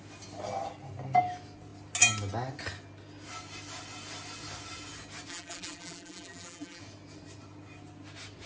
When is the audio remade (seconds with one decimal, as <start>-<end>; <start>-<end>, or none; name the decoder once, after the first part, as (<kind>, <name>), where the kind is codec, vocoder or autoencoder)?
5.3-6.8 (vocoder, BigVGAN v2)